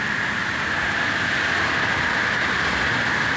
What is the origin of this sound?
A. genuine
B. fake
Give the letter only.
A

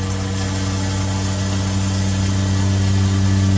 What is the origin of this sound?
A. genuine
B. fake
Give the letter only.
A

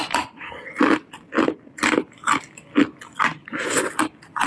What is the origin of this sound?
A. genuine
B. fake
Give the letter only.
A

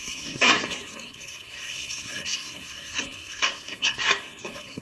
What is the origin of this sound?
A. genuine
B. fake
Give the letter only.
B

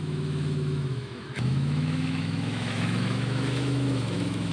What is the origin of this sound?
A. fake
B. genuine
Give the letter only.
A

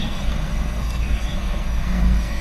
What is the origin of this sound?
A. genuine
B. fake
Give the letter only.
B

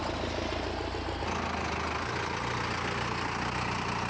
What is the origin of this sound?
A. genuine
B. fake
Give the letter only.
A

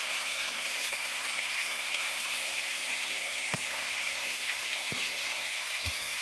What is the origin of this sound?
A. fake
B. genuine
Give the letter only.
A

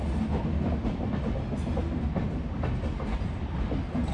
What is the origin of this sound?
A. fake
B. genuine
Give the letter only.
B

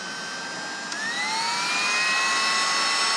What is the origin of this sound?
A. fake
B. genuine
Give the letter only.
B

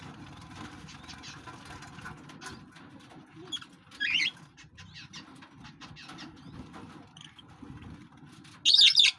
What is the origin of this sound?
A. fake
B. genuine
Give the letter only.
B